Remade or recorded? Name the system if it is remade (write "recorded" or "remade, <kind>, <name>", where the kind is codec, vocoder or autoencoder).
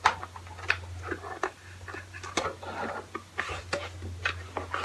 recorded